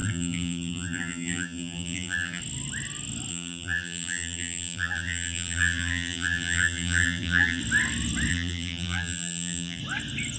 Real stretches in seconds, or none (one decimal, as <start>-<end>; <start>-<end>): 2.4-3.3; 7.6-8.3; 9.8-10.4